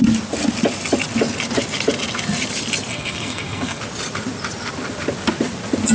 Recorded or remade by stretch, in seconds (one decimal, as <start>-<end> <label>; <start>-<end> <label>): 0.0-2.9 recorded; 2.9-3.8 remade; 3.8-5.9 recorded